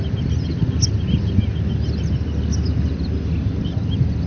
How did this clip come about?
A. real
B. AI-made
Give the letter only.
A